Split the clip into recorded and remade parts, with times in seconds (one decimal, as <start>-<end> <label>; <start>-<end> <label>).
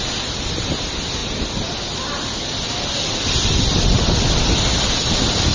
0.0-5.5 recorded